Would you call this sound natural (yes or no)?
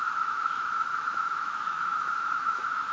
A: no